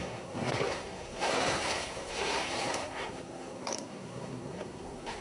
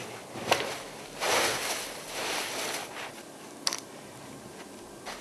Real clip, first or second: second